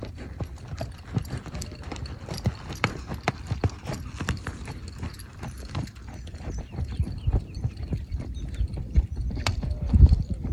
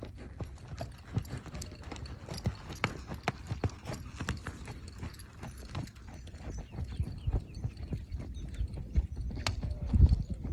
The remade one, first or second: first